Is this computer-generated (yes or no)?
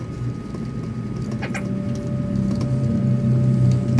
no